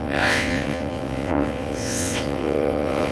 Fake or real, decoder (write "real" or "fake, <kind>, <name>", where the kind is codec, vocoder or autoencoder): fake, vocoder, WaveNeXt